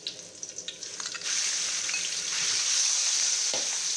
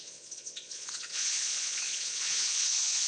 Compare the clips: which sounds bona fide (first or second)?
first